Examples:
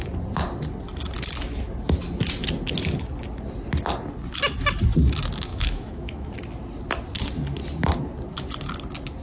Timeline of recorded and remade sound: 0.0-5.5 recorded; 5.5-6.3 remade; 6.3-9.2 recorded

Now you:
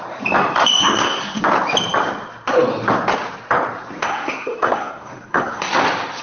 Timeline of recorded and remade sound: 0.0-0.8 recorded; 0.8-1.4 remade; 1.4-4.0 recorded; 4.0-5.7 remade; 5.7-6.2 recorded